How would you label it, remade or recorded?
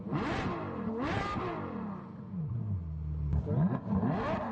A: recorded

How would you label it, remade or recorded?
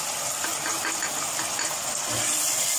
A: recorded